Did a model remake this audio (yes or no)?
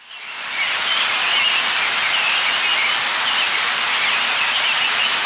no